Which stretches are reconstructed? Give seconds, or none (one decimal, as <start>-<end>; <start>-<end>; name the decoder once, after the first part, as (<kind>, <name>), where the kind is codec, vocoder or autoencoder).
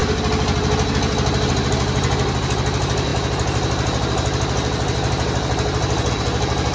none